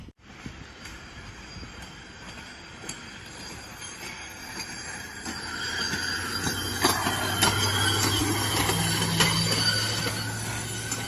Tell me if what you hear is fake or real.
real